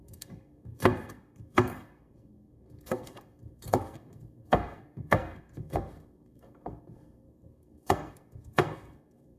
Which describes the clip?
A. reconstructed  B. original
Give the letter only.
A